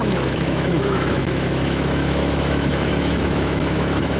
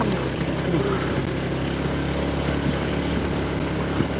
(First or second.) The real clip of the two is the second